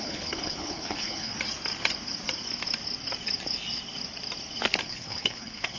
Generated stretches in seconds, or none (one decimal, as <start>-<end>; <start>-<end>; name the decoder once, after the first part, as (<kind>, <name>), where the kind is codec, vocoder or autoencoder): 0.0-1.3 (codec, HILCodec); 4.8-5.8